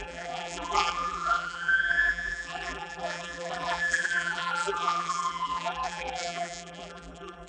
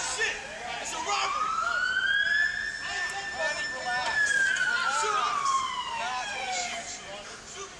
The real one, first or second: second